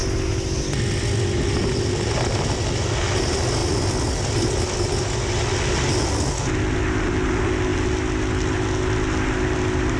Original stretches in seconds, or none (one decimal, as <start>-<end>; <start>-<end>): 0.0-10.0